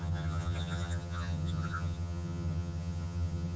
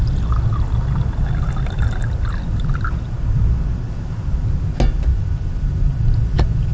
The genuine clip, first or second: second